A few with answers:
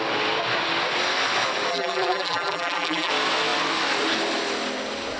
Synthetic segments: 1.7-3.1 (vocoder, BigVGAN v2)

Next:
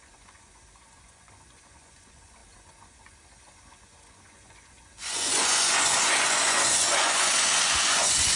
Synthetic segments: 0.0-8.4 (vocoder, Vocos)

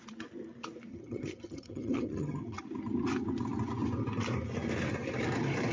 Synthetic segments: 0.9-2.6 (vocoder, HiFi-GAN)